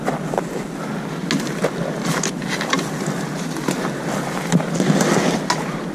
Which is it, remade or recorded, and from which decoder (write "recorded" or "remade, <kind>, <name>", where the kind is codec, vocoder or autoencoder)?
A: recorded